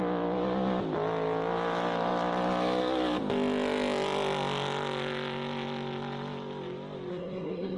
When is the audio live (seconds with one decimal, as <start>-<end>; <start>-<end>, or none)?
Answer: 0.0-7.1